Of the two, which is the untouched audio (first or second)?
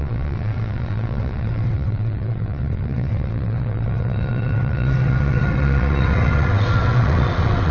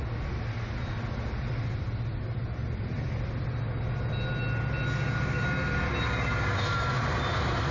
second